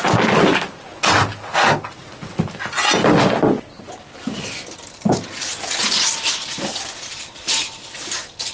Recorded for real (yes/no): yes